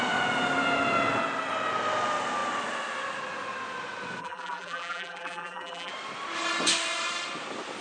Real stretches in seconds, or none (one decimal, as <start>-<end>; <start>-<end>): 0.0-4.2; 5.9-7.8